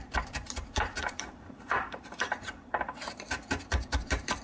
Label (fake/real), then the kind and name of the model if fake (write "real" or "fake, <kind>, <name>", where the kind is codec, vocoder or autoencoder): fake, vocoder, BigVGAN v2